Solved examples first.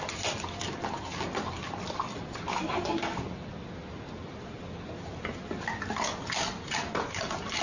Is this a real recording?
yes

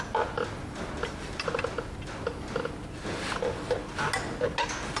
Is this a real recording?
yes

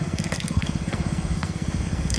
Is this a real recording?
no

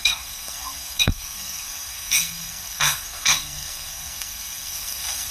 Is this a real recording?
no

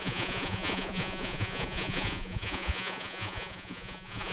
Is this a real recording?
no